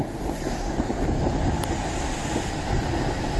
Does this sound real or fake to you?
real